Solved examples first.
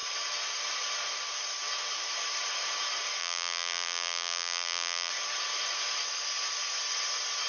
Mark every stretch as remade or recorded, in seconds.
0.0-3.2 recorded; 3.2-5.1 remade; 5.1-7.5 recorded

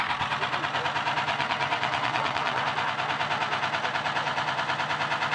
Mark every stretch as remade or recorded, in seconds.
0.0-1.3 recorded; 1.3-2.6 remade; 2.6-5.3 recorded

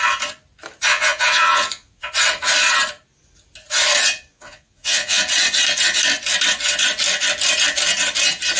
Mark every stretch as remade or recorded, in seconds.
0.0-0.9 recorded; 0.9-2.1 remade; 2.1-4.3 recorded; 4.3-5.2 remade; 5.2-8.6 recorded